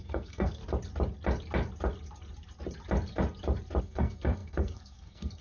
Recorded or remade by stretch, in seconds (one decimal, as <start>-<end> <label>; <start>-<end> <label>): 0.0-0.6 remade; 0.6-3.8 recorded; 3.8-5.4 remade